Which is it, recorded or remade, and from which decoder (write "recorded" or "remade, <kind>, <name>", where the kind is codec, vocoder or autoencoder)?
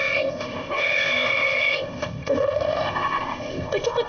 remade, codec, ZipCodec